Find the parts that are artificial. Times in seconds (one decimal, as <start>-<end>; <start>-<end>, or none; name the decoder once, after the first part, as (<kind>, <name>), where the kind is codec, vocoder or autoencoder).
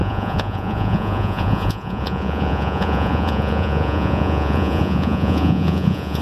0.0-6.2 (vocoder, Vocos)